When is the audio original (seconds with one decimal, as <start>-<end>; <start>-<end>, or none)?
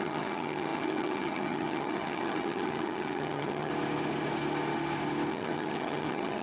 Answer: 3.7-5.3